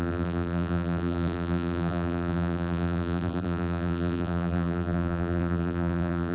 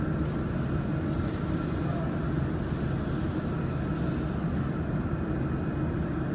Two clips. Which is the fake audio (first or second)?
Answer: first